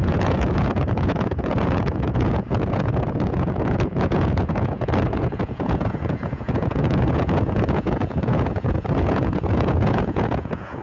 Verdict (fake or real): fake